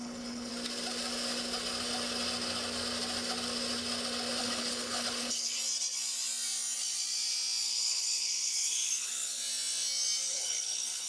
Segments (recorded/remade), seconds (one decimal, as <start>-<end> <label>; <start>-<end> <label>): 0.0-0.5 remade; 0.5-4.4 recorded; 4.4-5.6 remade; 5.6-7.6 recorded; 7.6-9.4 remade; 9.4-10.3 recorded; 10.3-11.1 remade